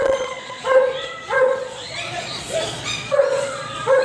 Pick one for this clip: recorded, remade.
remade